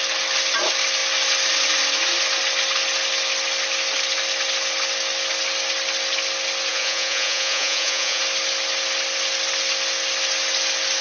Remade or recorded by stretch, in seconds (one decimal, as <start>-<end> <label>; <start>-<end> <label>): 0.0-6.7 recorded; 6.7-8.2 remade; 8.2-11.0 recorded